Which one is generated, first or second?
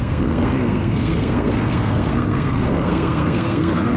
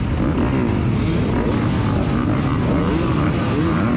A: first